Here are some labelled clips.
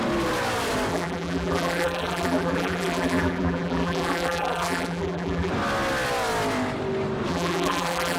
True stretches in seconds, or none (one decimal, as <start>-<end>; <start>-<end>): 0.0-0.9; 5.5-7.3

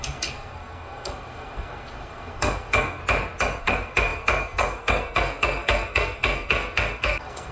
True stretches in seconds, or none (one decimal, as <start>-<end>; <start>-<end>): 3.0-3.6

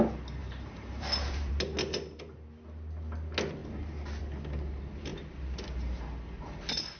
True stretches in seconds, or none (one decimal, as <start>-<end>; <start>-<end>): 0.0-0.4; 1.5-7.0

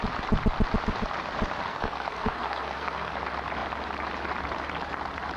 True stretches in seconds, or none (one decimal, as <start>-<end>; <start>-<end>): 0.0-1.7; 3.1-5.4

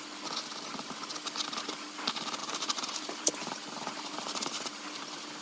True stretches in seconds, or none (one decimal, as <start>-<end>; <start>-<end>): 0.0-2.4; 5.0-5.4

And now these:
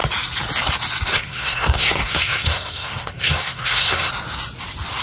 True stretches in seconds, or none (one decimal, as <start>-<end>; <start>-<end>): 0.0-1.1; 4.1-5.0

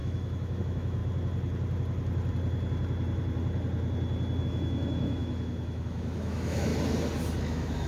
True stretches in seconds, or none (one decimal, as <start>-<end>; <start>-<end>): 1.0-4.4; 6.7-7.4